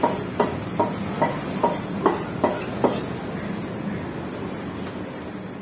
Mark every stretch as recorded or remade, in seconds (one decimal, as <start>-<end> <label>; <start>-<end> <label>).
0.0-5.6 recorded